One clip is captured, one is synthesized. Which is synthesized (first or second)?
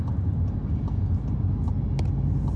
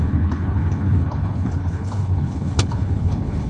second